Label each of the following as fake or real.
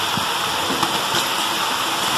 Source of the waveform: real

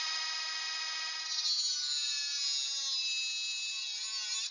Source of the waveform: real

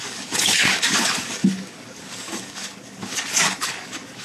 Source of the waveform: fake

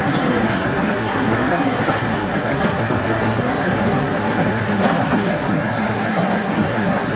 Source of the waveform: fake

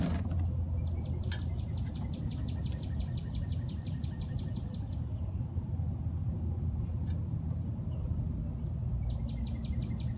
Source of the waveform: real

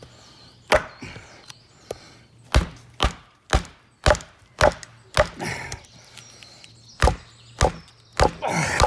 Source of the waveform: real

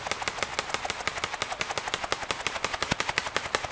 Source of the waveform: real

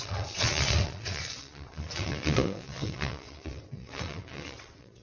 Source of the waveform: fake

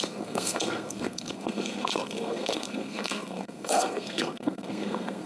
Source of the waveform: fake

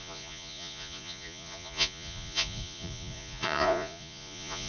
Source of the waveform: fake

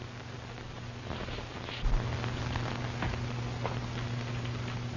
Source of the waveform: real